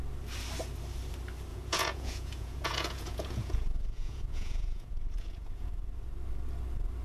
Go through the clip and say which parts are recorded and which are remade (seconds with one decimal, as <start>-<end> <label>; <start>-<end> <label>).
0.0-1.5 recorded; 1.5-5.7 remade; 5.7-7.0 recorded